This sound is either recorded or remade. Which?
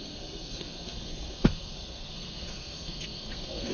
remade